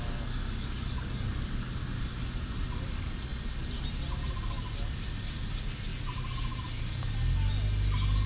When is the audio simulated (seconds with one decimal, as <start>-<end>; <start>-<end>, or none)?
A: 0.0-1.6